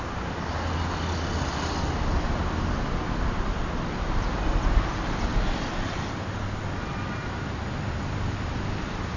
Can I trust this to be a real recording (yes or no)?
yes